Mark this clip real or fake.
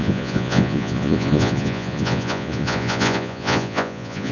fake